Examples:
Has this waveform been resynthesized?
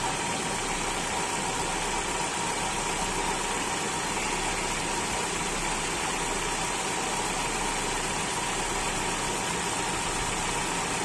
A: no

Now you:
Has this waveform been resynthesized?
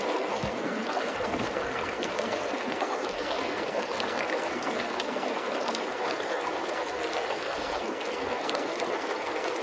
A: yes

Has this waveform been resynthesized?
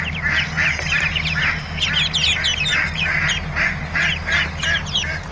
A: no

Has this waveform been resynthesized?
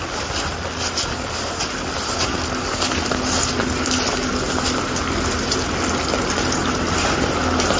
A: no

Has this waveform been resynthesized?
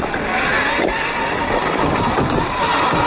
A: no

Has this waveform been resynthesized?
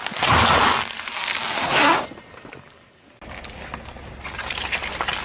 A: no